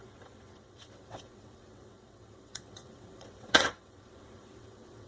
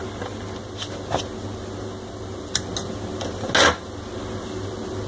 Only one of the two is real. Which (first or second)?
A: second